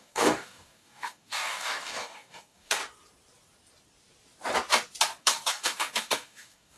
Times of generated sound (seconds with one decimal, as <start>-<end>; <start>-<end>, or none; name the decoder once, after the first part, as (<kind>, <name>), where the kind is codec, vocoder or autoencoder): 0.0-2.8 (codec, DAC); 5.2-6.8